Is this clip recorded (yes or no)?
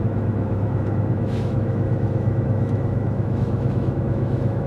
no